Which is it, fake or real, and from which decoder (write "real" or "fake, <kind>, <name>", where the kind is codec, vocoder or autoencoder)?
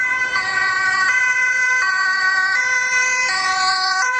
fake, vocoder, Vocos